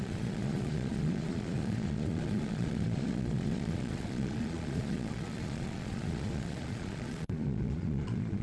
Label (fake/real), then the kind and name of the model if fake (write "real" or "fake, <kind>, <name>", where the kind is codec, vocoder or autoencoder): fake, vocoder, Vocos